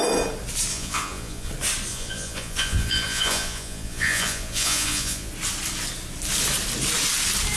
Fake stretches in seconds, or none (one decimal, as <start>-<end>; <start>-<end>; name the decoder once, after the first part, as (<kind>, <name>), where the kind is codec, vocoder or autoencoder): 0.7-1.5 (vocoder, Vocos); 1.9-5.3